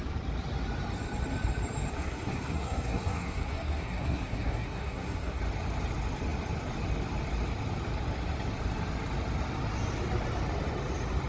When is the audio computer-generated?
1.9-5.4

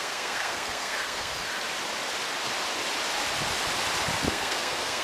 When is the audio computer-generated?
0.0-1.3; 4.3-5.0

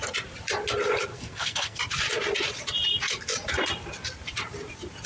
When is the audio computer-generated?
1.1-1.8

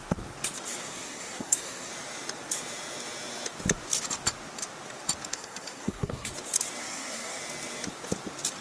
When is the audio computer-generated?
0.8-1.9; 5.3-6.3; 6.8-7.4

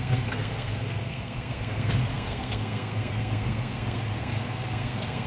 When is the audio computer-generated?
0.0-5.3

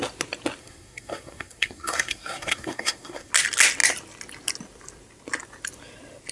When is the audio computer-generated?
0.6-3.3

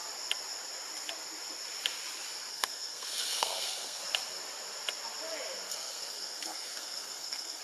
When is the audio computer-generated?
2.5-4.0; 5.7-7.6

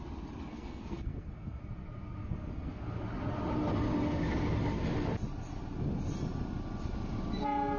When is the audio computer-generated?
0.5-1.6; 2.2-3.0